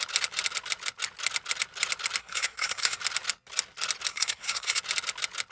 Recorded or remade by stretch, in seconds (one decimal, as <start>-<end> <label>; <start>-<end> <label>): 0.0-2.2 recorded; 2.2-3.0 remade; 3.0-4.1 recorded; 4.1-4.8 remade; 4.8-5.5 recorded